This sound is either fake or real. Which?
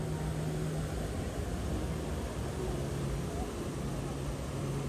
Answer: real